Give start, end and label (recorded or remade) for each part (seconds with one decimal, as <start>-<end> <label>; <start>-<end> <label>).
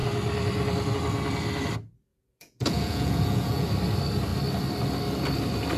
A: 0.0-2.1 recorded; 2.1-3.7 remade; 3.7-5.8 recorded